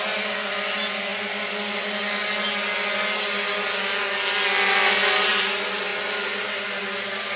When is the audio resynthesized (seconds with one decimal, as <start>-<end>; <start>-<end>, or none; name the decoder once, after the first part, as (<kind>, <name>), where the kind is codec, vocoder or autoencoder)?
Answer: none